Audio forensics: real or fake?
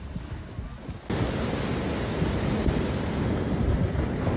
real